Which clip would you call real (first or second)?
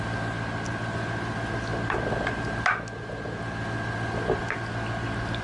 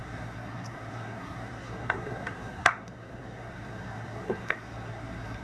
first